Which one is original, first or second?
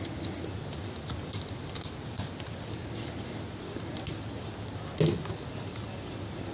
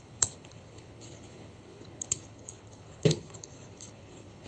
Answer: first